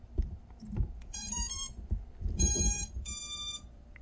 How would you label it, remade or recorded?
remade